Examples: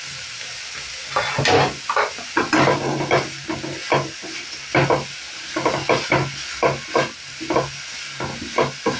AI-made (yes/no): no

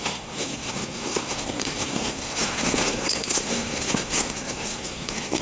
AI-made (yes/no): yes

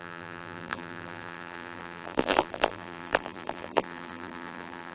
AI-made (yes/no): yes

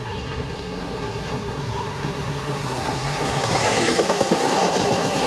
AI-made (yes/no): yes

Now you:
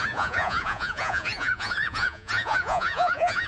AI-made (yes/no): yes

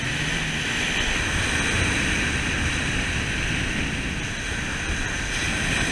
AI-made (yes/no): no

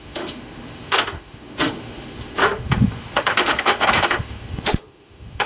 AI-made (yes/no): yes